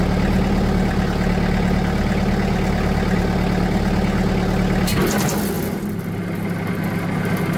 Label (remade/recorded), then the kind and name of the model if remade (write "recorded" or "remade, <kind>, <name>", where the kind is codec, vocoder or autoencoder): recorded